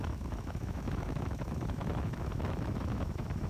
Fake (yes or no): yes